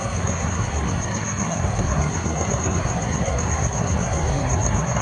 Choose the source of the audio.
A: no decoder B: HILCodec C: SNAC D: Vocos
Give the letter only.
C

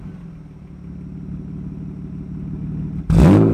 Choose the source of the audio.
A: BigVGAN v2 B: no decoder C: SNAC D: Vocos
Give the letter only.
B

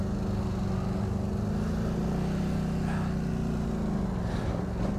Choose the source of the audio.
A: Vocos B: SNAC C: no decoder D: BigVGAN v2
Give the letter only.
C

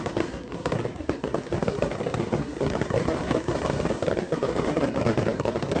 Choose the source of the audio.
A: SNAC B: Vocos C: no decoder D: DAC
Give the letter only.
A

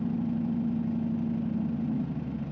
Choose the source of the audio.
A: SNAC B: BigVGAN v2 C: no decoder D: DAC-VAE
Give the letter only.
C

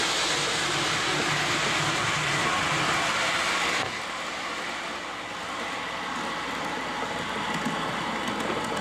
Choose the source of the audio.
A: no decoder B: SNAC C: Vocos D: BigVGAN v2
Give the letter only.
A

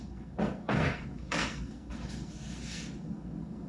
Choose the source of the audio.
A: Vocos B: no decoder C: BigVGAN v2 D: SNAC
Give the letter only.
D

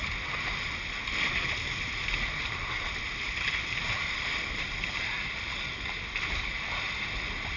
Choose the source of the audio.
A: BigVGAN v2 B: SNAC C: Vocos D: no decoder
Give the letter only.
D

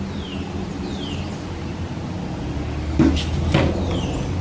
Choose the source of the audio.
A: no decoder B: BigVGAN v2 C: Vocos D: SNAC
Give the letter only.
A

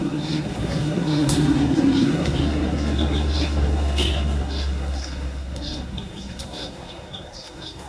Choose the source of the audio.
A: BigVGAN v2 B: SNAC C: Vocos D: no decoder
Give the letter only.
B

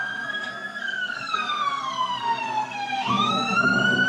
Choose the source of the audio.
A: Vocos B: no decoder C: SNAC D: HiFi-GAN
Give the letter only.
C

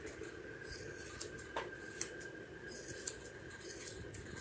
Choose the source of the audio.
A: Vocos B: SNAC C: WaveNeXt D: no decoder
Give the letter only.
D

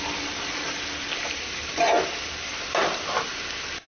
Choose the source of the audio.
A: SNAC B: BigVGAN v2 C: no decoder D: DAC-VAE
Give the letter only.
C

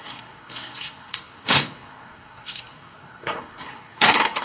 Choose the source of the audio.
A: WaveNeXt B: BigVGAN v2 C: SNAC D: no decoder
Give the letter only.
C